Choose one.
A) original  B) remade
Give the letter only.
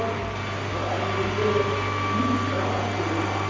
A